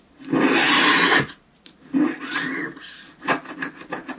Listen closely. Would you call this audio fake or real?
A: real